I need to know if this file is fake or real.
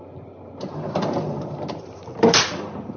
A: real